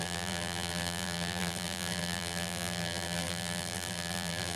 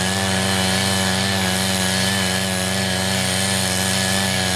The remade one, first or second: first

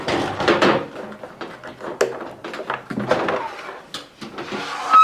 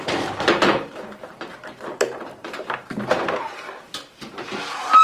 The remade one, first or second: second